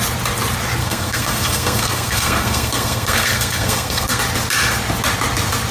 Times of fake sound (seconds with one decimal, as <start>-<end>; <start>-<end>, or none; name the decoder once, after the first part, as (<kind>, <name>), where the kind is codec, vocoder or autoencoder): 0.8-4.2 (codec, SNAC)